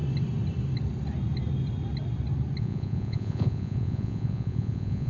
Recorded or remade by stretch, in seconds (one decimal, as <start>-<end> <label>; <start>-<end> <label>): 0.0-2.6 recorded; 2.6-5.1 remade